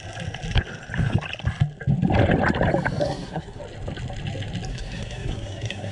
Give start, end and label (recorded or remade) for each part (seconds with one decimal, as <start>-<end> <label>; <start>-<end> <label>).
0.0-3.0 recorded; 3.0-3.6 remade; 3.6-4.7 recorded; 4.7-5.9 remade